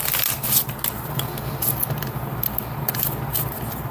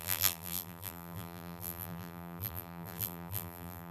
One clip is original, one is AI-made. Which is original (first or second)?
first